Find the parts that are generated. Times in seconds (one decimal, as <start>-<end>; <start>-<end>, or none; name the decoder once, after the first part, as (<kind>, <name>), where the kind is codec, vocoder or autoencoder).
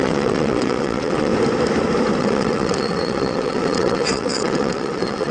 0.0-1.3 (vocoder, WaveNeXt); 2.2-5.3